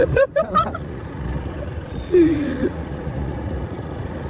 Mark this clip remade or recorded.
remade